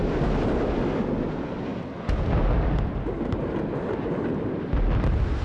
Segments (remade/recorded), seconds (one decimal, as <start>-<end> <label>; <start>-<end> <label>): 0.0-5.4 recorded